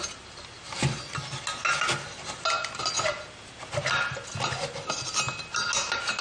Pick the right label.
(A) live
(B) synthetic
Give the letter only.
A